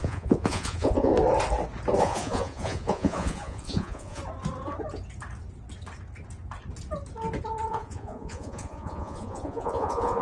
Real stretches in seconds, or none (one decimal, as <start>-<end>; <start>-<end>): 1.1-2.0; 4.2-7.7